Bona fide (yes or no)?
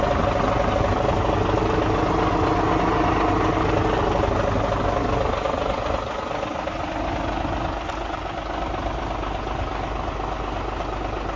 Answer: yes